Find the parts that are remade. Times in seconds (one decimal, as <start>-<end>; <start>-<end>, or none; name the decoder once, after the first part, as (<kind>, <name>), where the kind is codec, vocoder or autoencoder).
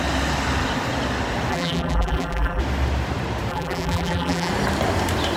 1.5-2.6 (vocoder, BigVGAN v2); 3.5-4.5